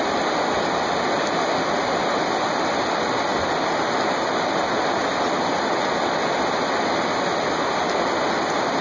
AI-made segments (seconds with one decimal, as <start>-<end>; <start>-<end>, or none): none